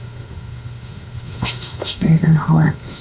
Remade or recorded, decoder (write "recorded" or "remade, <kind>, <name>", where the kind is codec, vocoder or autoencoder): remade, codec, SNAC